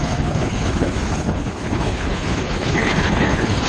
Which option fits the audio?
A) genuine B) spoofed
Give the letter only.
B